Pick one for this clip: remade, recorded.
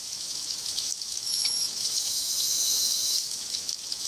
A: remade